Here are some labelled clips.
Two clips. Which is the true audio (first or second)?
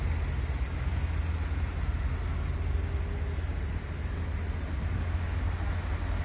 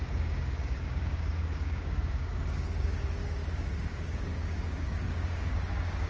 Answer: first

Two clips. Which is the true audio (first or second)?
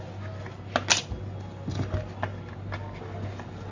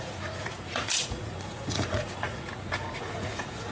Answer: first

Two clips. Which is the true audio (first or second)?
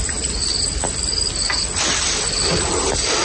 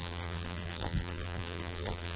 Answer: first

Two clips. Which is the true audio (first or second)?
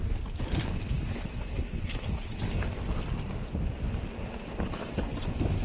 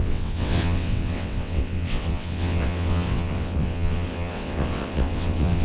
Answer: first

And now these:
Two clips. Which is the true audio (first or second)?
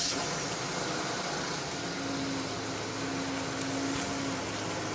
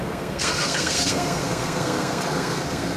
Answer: first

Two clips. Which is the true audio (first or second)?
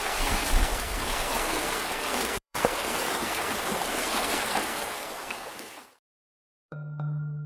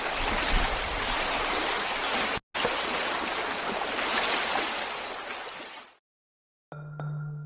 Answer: second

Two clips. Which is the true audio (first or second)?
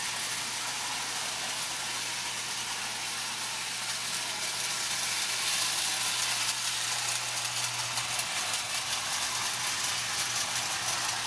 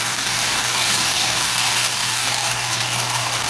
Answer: first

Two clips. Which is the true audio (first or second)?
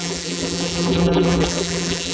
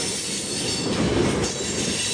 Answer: second